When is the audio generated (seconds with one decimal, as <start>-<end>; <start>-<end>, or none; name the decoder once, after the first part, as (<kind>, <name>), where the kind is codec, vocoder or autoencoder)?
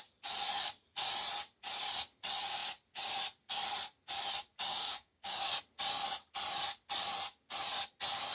4.7-5.3 (codec, DAC)